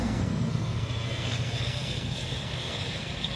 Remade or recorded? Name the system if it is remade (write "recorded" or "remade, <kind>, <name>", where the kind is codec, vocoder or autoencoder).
remade, codec, SNAC